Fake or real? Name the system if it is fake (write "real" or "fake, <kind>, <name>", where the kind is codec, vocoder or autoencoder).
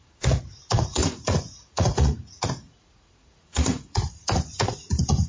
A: fake, vocoder, Vocos